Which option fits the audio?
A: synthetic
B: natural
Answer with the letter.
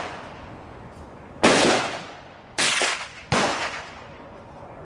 A